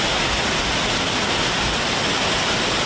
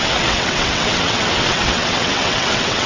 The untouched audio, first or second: first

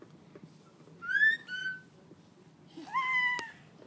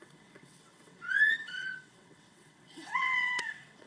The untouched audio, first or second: first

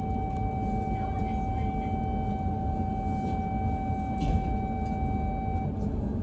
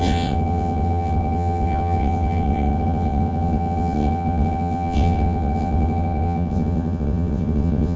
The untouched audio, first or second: first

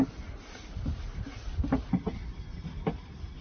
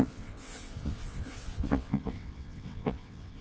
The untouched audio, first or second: first